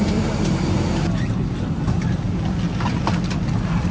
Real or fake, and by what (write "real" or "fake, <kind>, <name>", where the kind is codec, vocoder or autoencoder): real